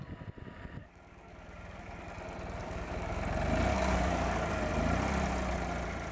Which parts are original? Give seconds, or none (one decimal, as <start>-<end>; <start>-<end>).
0.0-0.8; 2.0-2.6; 3.2-3.7; 4.6-6.1